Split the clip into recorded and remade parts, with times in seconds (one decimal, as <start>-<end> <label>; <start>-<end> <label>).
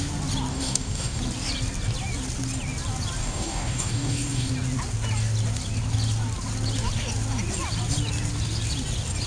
0.0-0.5 recorded; 0.5-1.2 remade; 1.2-3.2 recorded; 3.2-4.5 remade; 4.5-9.3 recorded